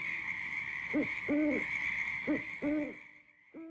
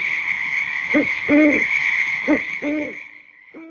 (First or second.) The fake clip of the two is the second